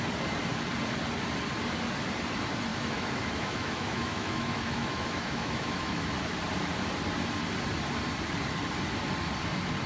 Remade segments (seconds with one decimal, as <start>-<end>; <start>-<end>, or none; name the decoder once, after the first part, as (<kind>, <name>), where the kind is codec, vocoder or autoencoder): 2.7-6.1 (autoencoder, DAC-VAE)